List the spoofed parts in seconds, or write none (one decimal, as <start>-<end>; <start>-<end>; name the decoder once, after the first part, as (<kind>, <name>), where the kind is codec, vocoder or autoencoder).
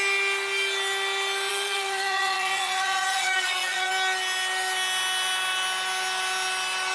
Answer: 1.5-3.9 (vocoder, Vocos)